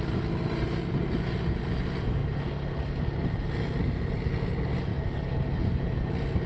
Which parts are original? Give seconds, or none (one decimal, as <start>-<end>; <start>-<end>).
0.0-6.5